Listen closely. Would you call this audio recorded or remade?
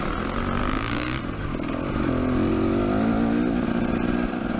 recorded